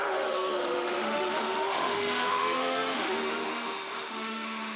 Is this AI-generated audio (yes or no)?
yes